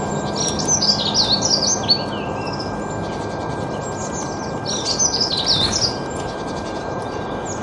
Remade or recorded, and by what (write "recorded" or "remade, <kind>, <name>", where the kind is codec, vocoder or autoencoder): recorded